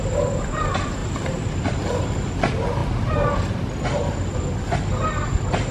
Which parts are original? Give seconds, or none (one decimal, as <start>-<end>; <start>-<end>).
0.0-1.0; 1.9-5.7